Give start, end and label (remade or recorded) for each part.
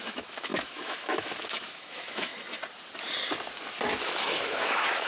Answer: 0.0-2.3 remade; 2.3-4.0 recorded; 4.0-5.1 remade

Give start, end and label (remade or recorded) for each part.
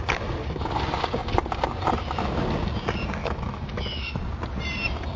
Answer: 0.0-3.2 recorded; 3.2-4.2 remade; 4.2-5.2 recorded